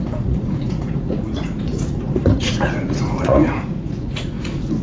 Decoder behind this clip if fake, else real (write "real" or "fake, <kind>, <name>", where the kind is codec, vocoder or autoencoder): fake, vocoder, Vocos